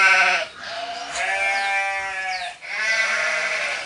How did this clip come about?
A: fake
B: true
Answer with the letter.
B